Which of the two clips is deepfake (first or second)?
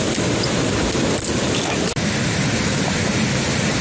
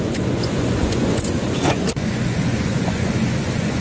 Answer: second